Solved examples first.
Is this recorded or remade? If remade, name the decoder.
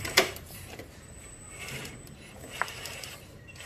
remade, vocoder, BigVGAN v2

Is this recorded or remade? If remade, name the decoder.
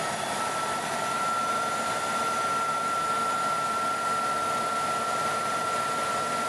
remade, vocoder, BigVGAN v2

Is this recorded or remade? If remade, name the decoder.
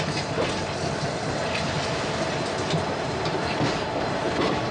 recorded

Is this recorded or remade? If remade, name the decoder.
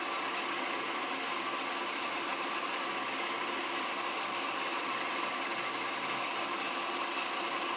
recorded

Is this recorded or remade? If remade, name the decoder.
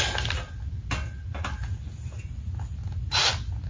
recorded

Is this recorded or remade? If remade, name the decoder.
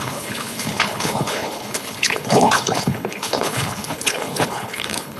remade, codec, HILCodec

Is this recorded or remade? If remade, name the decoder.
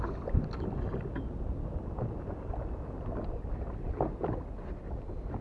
recorded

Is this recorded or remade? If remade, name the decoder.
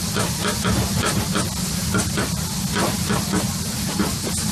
recorded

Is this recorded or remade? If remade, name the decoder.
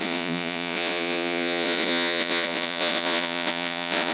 remade, vocoder, Vocos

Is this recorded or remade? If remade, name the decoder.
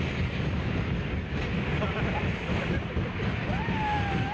recorded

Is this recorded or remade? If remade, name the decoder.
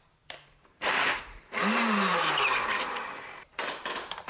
remade, vocoder, BigVGAN v2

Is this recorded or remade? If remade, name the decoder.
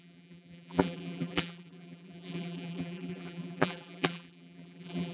remade, vocoder, BigVGAN v2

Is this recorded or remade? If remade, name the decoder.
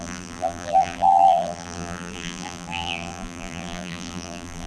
remade, vocoder, BigVGAN v2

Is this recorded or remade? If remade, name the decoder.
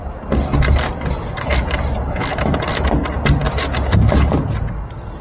recorded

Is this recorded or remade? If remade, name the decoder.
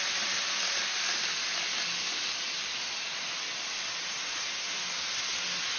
recorded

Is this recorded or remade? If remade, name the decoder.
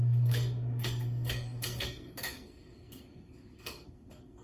remade, codec, SNAC